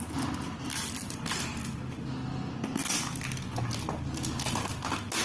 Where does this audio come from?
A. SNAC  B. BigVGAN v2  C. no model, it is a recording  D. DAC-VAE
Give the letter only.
C